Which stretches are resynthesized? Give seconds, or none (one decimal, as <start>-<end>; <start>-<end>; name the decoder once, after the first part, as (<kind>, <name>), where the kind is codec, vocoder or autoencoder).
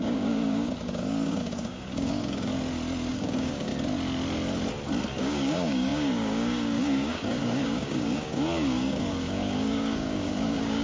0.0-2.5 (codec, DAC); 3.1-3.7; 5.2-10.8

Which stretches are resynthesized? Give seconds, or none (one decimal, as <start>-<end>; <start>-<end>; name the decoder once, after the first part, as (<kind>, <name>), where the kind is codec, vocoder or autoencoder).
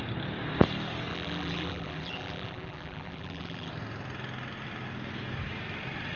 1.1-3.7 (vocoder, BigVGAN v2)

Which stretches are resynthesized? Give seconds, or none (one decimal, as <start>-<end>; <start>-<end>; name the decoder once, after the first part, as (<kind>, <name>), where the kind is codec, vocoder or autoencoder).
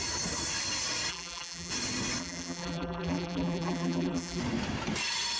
1.1-1.7 (vocoder, BigVGAN v2); 2.2-4.4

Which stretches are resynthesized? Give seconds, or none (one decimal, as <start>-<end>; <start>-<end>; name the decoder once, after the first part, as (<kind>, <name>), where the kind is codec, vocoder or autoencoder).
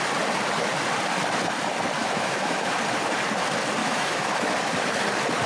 2.0-2.7 (autoencoder, DAC-VAE); 3.8-4.5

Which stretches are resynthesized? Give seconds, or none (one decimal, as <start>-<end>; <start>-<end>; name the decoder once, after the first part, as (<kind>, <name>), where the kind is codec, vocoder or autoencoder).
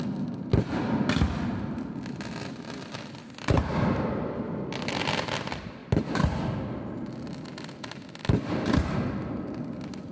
none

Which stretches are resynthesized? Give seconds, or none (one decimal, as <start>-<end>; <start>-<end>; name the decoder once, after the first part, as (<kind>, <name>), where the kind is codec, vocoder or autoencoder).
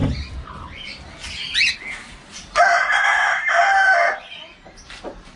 1.7-3.6 (vocoder, BigVGAN v2); 4.3-5.4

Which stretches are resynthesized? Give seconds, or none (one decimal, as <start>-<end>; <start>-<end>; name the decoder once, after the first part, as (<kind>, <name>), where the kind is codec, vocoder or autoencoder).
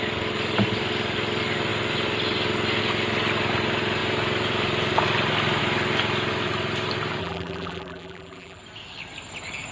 7.2-8.6 (vocoder, BigVGAN v2)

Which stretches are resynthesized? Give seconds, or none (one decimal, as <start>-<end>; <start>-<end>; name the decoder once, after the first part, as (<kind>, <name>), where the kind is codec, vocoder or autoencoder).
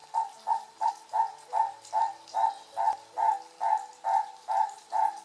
0.0-0.9 (vocoder, BigVGAN v2)